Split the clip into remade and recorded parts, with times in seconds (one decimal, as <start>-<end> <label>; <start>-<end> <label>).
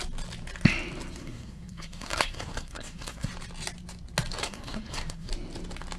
0.0-1.2 recorded; 1.2-3.3 remade; 3.3-4.4 recorded; 4.4-5.3 remade; 5.3-6.0 recorded